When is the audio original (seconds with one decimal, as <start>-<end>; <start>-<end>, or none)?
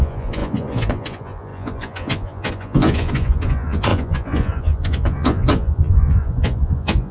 none